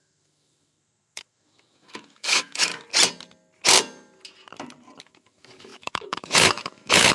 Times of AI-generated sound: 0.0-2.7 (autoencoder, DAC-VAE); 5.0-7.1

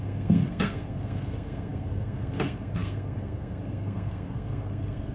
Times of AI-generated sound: 0.0-5.1 (codec, SNAC)

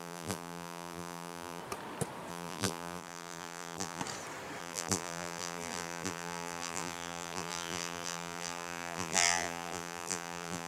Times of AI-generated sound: 0.0-1.6 (vocoder, BigVGAN v2); 2.3-4.0; 4.6-10.7

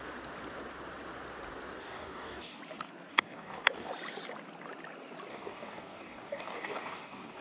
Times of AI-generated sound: 1.8-2.6 (codec, DAC); 3.1-3.9; 5.3-7.4

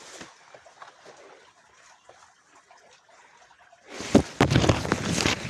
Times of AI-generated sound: 3.5-4.3 (vocoder, BigVGAN v2)

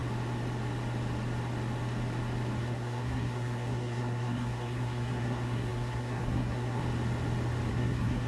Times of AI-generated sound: 2.6-6.8 (codec, SNAC); 7.7-8.3